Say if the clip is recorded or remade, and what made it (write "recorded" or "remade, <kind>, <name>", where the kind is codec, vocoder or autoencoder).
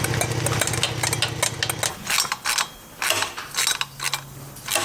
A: recorded